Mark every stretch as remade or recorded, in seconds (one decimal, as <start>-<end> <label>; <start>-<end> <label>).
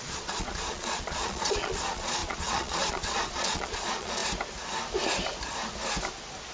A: 0.0-4.2 remade; 4.2-6.5 recorded